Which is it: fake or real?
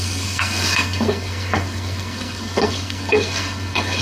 fake